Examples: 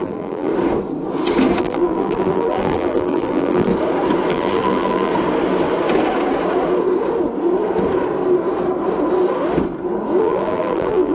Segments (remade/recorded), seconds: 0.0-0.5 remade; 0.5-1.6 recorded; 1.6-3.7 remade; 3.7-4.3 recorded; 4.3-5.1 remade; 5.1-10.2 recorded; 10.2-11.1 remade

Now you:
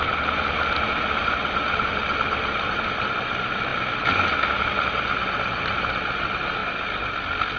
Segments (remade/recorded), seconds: 0.0-7.6 recorded

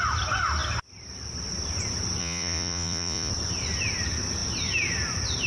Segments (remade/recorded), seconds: 0.0-2.2 recorded; 2.2-3.3 remade; 3.3-5.5 recorded

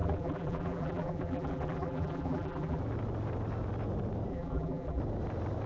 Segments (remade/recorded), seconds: 0.0-2.8 remade; 2.8-4.3 recorded; 4.3-5.0 remade; 5.0-5.7 recorded

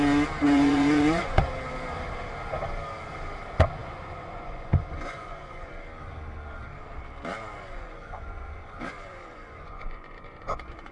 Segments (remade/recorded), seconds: 0.0-0.4 recorded; 0.4-1.5 remade; 1.5-3.8 recorded; 3.8-5.7 remade; 5.7-7.4 recorded; 7.4-10.9 remade

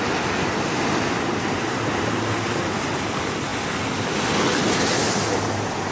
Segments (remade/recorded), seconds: 0.0-5.9 recorded

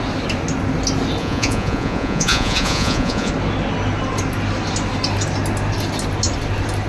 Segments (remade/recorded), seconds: 0.0-1.2 recorded; 1.2-3.3 remade; 3.3-6.9 recorded

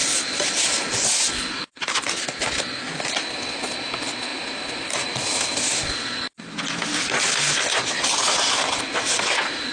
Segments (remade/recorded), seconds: 0.0-9.7 recorded